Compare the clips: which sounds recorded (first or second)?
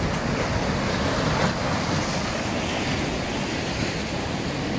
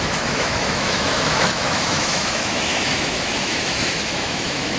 first